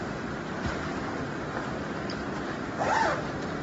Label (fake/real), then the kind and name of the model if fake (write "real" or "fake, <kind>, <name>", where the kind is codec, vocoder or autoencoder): real